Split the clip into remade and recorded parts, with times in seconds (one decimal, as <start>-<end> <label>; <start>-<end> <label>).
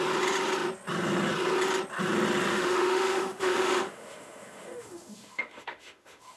0.0-2.5 recorded; 2.5-6.4 remade